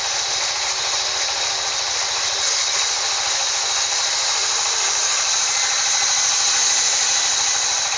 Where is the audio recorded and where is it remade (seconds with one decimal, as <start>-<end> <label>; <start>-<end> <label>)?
0.0-4.4 recorded; 4.4-5.4 remade; 5.4-8.0 recorded